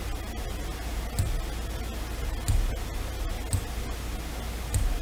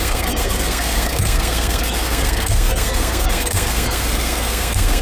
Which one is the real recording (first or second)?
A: first